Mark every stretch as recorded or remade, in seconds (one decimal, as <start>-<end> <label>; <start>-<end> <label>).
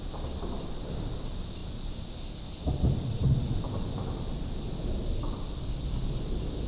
0.0-6.7 recorded